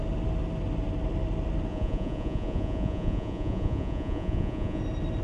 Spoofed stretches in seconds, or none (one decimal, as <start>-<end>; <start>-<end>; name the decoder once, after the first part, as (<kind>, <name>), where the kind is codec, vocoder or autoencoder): 1.7-4.8 (vocoder, Vocos)